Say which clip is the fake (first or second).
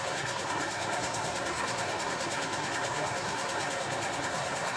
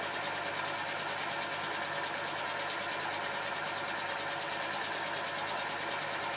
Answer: first